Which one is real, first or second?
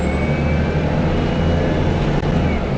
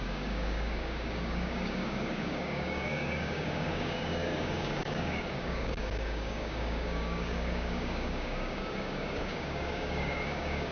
first